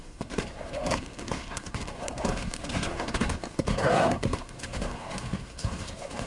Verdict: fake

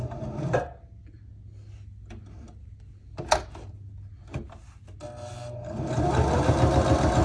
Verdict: real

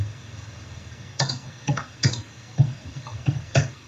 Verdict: fake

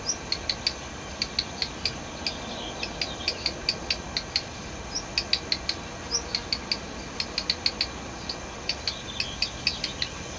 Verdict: real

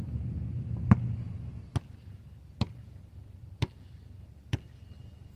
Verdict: real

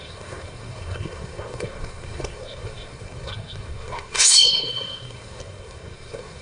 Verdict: fake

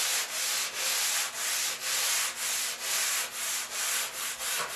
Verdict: real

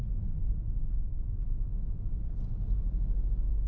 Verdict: real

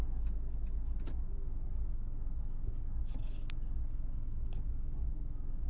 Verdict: real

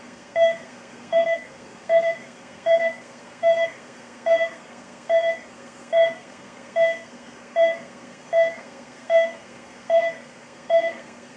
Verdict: fake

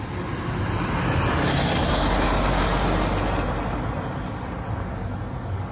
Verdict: real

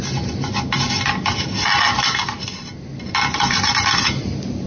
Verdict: real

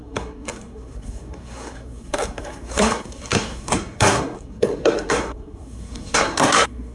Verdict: fake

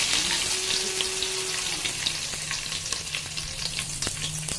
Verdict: real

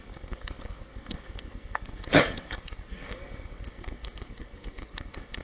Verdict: fake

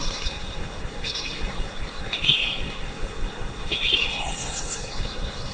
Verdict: fake